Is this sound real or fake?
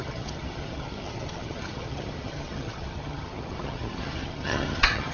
fake